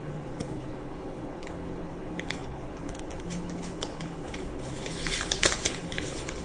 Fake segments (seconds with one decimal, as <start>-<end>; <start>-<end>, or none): 0.0-6.4